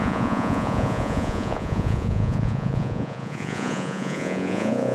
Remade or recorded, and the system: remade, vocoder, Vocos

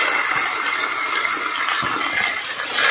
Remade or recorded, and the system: recorded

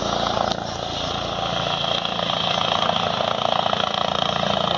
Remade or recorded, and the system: recorded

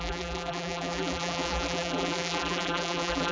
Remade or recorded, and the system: remade, vocoder, BigVGAN v2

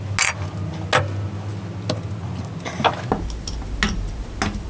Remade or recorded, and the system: recorded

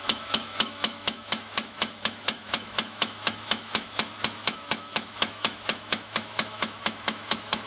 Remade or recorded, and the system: remade, autoencoder, DAC-VAE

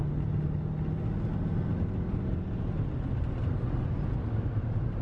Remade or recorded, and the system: recorded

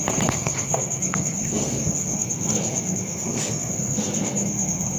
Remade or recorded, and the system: remade, codec, SNAC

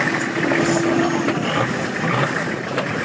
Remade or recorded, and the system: recorded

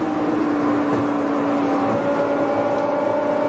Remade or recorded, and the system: recorded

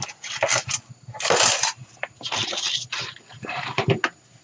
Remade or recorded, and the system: recorded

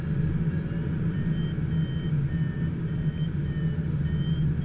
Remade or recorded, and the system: recorded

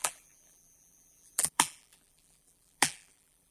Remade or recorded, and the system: remade, vocoder, BigVGAN v2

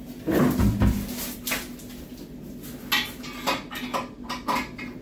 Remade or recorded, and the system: recorded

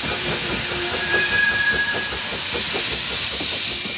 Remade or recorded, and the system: remade, vocoder, BigVGAN v2